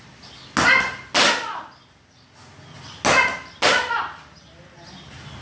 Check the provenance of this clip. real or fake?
real